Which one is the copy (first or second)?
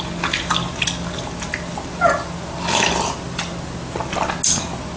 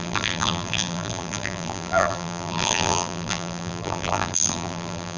second